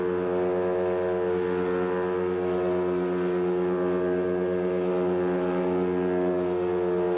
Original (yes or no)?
yes